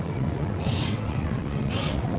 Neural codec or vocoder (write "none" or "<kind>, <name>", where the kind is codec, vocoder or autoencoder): vocoder, WaveNeXt